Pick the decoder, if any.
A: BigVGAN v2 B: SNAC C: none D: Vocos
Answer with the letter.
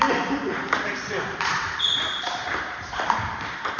A